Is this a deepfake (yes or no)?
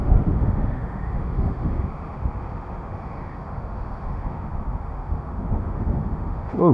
yes